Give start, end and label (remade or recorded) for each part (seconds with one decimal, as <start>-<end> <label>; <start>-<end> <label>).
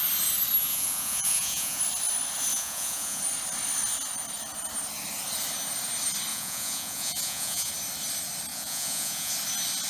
0.0-0.6 recorded; 0.6-1.8 remade; 1.8-2.5 recorded; 2.5-3.2 remade; 3.2-6.3 recorded; 6.3-7.7 remade; 7.7-8.5 recorded; 8.5-9.3 remade; 9.3-9.9 recorded